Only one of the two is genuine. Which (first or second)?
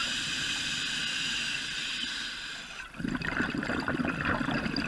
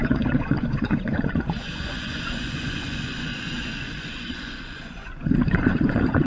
first